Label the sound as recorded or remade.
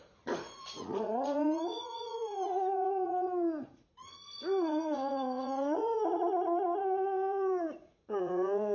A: remade